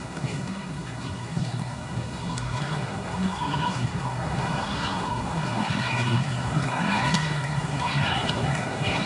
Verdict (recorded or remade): remade